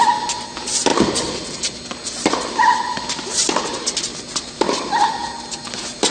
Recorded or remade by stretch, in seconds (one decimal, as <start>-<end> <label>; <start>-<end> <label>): 0.0-0.9 recorded; 0.9-3.6 remade; 3.6-5.2 recorded; 5.2-6.1 remade